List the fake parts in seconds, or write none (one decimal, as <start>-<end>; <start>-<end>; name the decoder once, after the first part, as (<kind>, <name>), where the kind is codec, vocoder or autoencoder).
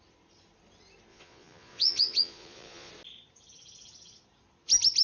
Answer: 1.1-2.9 (vocoder, Vocos)